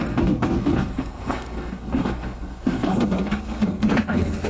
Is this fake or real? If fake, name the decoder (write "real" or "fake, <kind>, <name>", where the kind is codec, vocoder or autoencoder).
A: fake, codec, SNAC